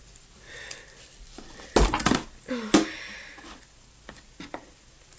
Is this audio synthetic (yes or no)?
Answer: no